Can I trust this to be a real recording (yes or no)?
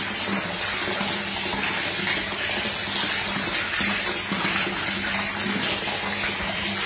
yes